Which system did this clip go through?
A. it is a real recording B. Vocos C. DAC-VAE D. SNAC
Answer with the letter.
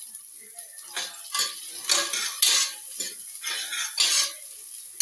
A